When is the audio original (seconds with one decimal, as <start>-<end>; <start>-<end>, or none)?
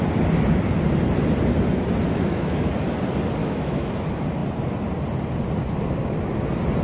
0.0-2.1; 2.6-3.4; 3.9-6.8